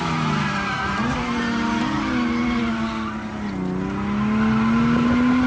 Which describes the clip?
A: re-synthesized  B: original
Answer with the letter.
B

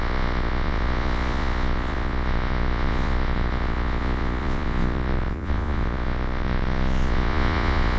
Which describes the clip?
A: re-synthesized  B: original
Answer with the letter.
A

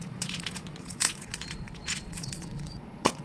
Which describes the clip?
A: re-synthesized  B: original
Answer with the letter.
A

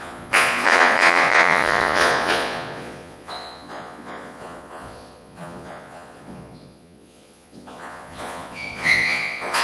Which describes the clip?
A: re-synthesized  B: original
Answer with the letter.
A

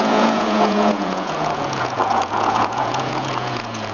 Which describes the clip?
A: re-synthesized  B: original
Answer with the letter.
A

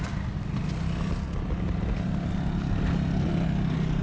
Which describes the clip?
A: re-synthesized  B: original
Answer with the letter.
B